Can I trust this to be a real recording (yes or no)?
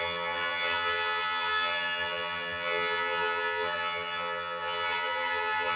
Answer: no